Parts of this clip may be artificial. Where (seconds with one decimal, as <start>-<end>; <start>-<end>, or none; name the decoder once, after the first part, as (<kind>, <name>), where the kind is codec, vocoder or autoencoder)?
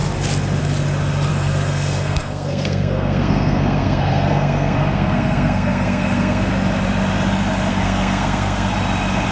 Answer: 1.3-6.5 (codec, SNAC); 7.7-8.7